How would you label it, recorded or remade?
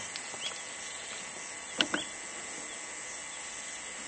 recorded